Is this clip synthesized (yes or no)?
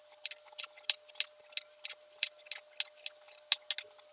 no